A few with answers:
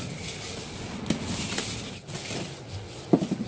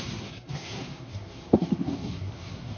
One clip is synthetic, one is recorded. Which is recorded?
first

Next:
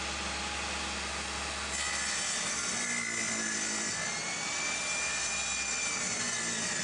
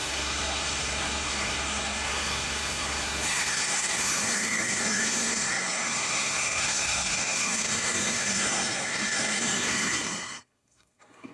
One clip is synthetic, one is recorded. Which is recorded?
first